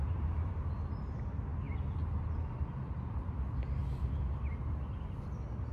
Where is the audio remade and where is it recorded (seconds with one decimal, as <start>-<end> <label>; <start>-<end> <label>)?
0.0-0.7 remade; 0.7-5.7 recorded